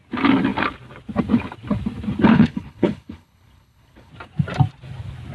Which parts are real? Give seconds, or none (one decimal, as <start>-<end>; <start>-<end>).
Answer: 0.0-2.3; 4.1-5.3